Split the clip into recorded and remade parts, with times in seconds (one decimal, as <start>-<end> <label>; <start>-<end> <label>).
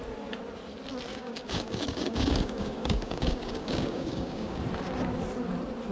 0.0-1.1 recorded; 1.1-4.6 remade; 4.6-5.9 recorded